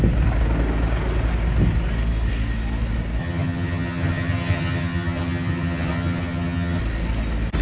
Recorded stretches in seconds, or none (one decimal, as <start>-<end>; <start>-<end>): 0.0-3.2; 6.8-7.6